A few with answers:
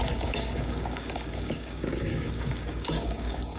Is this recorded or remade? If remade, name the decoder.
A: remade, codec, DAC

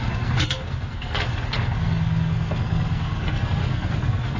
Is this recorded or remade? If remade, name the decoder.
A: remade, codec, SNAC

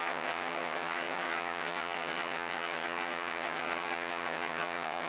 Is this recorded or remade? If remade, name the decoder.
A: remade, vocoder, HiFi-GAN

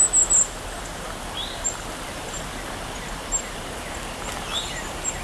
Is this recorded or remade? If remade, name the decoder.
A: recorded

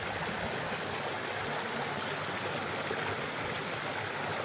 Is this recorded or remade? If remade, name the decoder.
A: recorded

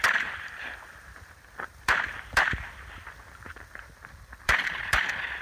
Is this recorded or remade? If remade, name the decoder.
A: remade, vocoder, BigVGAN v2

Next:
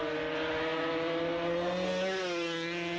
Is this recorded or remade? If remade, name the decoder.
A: recorded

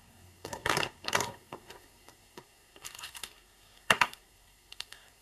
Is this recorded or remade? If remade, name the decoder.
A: remade, codec, SNAC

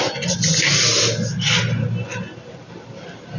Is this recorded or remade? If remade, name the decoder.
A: recorded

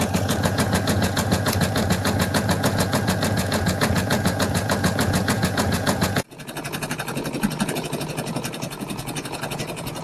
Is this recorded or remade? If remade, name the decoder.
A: remade, vocoder, Vocos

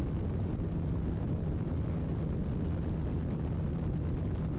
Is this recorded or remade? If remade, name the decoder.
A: recorded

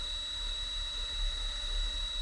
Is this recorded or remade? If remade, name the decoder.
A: recorded